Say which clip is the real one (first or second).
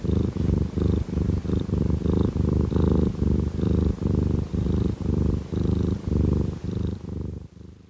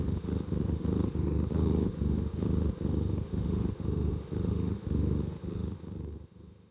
first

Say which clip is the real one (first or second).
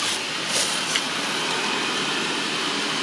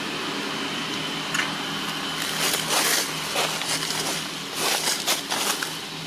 second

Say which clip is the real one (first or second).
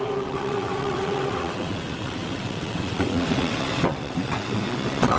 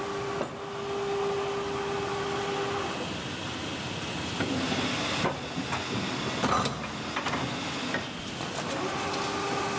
second